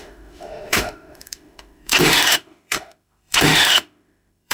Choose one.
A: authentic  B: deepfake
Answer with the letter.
B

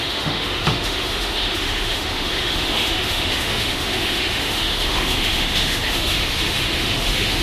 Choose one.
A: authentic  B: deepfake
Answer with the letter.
B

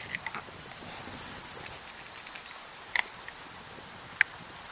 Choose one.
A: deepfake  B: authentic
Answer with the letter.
B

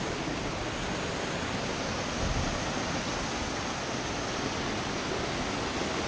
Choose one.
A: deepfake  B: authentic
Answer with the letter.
B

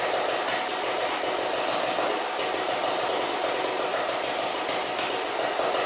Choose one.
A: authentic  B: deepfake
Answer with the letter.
A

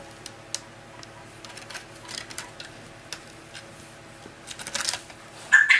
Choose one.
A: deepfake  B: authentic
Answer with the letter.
B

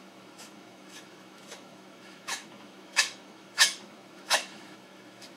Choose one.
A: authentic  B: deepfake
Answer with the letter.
B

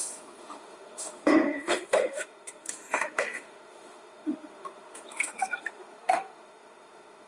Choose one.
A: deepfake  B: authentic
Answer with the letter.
A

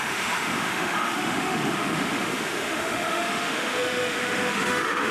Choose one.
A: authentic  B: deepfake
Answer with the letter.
B